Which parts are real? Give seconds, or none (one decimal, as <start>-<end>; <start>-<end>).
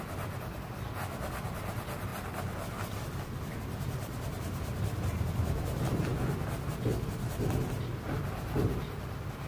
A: 0.0-2.1; 3.5-9.5